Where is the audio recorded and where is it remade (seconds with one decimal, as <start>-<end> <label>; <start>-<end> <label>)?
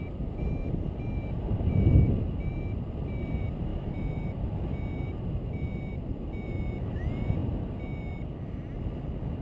0.0-3.7 recorded; 3.7-4.3 remade; 4.3-9.4 recorded